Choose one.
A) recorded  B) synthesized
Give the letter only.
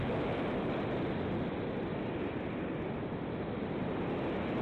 A